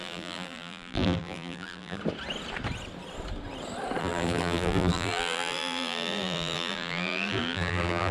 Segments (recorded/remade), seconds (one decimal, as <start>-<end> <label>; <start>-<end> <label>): 0.0-2.0 remade; 2.0-4.0 recorded; 4.0-8.1 remade